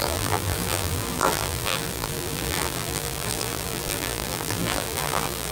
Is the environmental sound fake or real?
fake